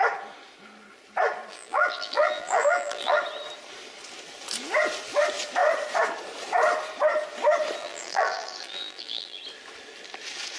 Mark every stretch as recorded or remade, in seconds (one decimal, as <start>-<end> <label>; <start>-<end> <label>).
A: 0.0-1.5 recorded; 1.5-3.2 remade; 3.2-7.8 recorded; 7.8-9.4 remade; 9.4-10.6 recorded